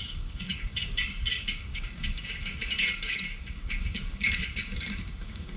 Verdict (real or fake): fake